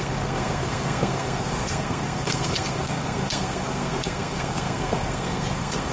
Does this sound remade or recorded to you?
remade